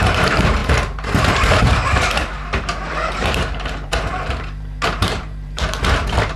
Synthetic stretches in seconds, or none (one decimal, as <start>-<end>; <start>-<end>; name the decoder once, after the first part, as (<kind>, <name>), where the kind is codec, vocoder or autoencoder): 0.0-6.4 (vocoder, BigVGAN v2)